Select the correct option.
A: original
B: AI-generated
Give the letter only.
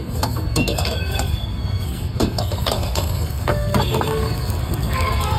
B